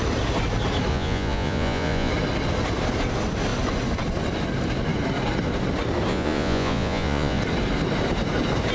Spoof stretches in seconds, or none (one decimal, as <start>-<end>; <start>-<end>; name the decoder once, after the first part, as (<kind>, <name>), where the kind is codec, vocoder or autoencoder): 0.9-2.1 (vocoder, Vocos); 6.1-7.4